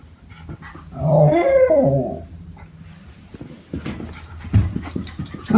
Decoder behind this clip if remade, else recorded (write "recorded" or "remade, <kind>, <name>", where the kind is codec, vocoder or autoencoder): recorded